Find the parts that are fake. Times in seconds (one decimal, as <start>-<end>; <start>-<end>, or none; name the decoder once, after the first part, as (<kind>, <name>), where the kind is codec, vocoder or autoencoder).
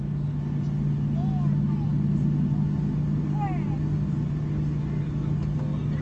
none